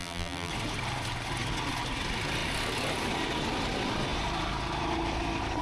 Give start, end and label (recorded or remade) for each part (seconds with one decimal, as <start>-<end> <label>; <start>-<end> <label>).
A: 0.0-0.5 remade; 0.5-5.6 recorded